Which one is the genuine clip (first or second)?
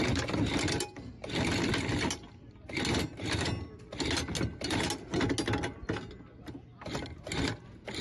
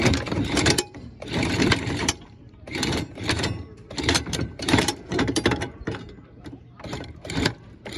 first